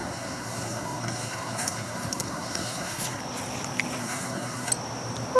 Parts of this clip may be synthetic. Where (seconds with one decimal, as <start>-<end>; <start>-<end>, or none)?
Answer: 0.0-3.2; 4.0-4.7